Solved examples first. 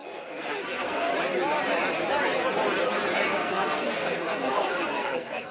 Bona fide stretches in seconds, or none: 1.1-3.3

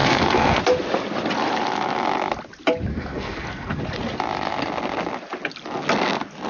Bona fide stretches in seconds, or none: 0.6-2.9; 3.8-6.5

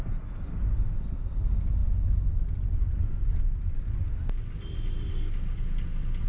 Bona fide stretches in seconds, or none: 0.0-6.3

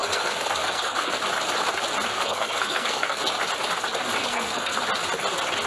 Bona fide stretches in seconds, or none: 1.2-2.1; 3.2-4.3; 4.8-5.7

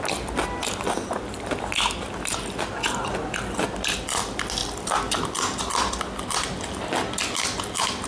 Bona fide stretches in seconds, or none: 0.0-8.1

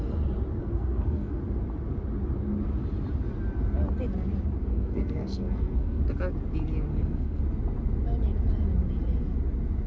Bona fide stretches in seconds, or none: 0.0-0.6; 1.4-4.6; 6.0-6.9; 7.4-9.9

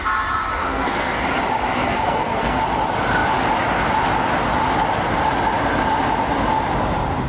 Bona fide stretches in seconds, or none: 0.0-0.6; 1.2-1.9; 2.6-7.3